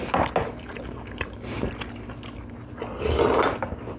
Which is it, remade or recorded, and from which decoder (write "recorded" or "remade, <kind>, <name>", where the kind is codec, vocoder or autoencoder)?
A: recorded